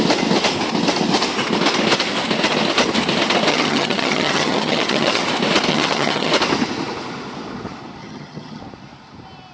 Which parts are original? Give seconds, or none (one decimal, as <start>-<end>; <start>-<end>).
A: 0.0-3.5; 5.2-5.7; 6.3-8.0; 8.6-9.5